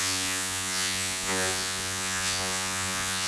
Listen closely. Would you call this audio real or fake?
fake